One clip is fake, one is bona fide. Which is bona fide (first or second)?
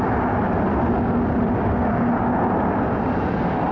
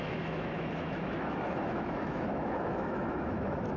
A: first